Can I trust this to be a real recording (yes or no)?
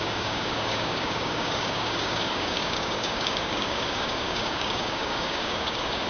no